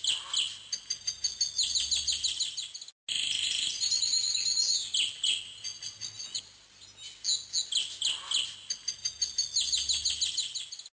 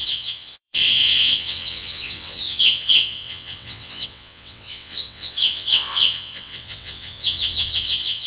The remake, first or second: second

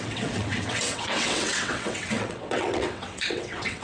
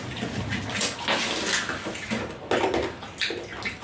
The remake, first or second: first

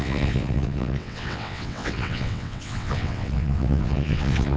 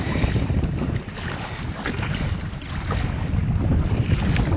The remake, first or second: first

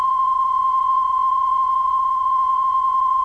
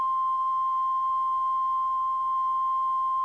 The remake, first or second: first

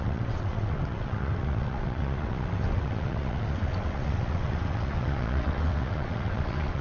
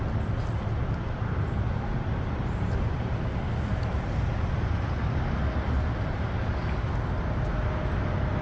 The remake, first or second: first